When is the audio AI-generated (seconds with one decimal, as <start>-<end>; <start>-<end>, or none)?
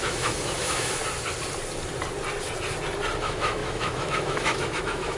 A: 0.0-1.0; 3.2-5.2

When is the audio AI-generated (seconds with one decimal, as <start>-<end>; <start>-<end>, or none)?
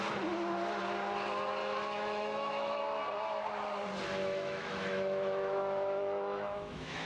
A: 1.6-2.8; 4.2-7.1